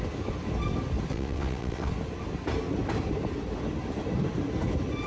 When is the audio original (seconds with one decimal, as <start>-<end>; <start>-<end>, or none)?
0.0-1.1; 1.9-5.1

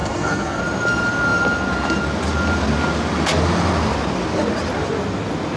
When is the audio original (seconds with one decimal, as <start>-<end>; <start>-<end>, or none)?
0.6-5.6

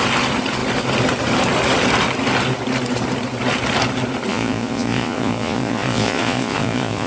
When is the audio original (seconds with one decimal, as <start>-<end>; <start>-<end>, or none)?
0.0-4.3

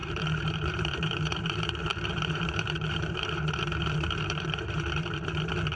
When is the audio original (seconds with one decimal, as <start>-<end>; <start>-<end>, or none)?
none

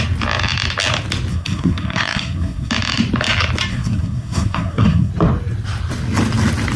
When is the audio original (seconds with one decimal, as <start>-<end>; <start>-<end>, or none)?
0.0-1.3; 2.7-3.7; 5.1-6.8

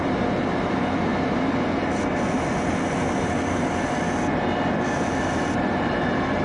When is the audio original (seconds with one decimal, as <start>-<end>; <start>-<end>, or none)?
0.0-6.4